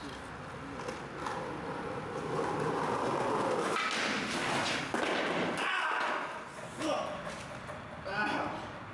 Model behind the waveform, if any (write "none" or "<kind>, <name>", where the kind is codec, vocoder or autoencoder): none